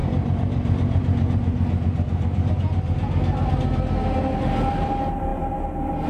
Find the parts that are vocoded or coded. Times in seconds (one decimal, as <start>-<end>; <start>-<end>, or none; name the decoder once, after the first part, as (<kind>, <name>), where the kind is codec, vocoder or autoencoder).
0.0-3.5 (vocoder, BigVGAN v2)